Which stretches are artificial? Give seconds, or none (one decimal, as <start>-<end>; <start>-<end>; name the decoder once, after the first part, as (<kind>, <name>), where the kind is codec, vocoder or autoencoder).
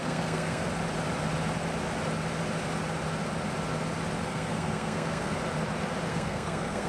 0.0-0.7 (codec, SNAC); 4.3-5.3; 6.1-6.9